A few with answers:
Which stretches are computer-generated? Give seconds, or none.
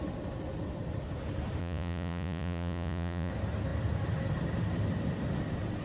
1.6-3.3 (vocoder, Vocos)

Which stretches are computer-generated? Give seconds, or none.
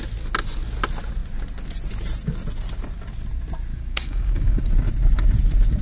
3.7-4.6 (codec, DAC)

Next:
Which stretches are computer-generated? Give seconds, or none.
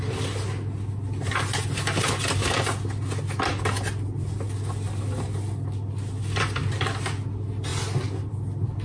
none